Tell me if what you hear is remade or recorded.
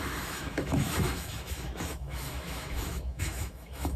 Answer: remade